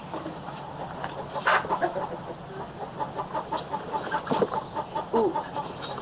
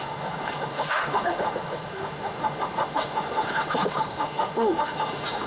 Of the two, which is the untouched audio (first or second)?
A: first